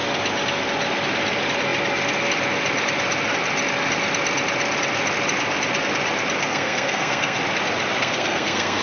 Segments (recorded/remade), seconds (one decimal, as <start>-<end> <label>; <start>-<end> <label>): 0.0-6.4 recorded; 6.4-7.4 remade; 7.4-8.0 recorded; 8.0-8.8 remade